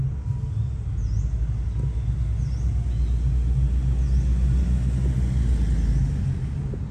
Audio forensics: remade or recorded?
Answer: recorded